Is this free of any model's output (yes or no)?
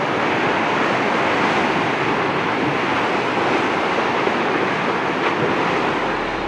yes